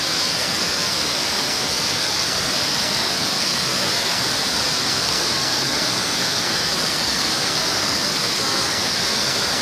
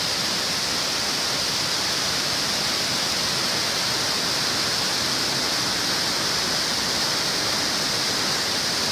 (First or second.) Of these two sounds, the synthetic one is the first